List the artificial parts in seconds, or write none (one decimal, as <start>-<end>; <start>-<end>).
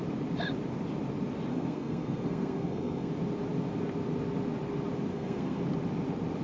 1.5-3.1; 5.1-5.6